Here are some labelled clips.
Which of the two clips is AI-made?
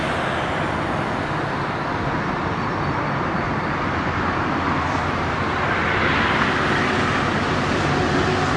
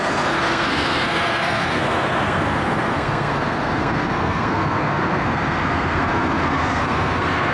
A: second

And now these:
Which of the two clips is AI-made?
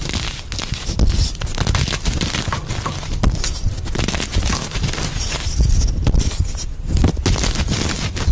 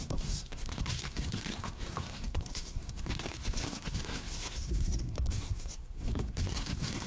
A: second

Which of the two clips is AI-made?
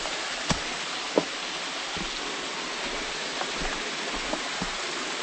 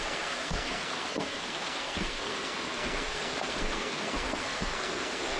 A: second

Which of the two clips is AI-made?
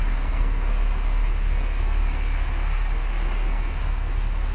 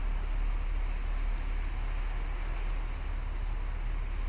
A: first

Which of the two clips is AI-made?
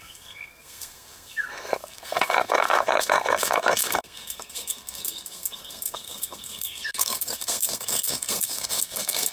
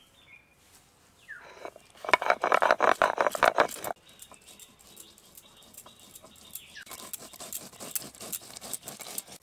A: first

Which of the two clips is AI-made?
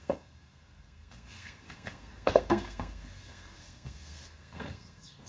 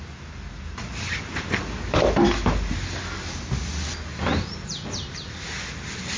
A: first